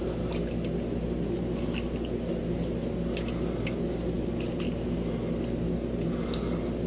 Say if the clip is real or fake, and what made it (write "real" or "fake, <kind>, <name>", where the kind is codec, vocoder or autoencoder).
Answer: real